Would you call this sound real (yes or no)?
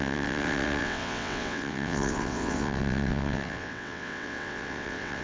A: no